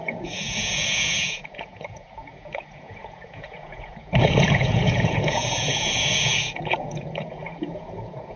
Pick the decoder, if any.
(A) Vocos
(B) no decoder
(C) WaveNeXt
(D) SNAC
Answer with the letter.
A